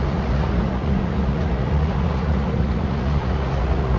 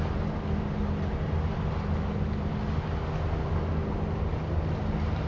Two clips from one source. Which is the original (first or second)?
second